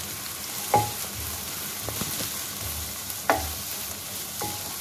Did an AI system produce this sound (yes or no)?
no